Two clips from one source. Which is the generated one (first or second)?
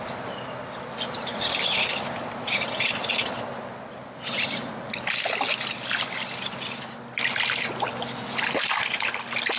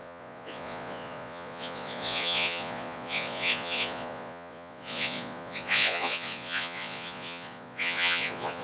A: second